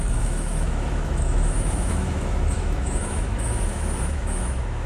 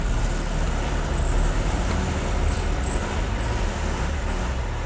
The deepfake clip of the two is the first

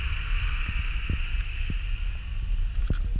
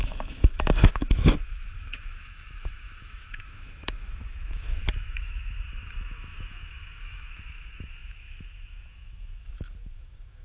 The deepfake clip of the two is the second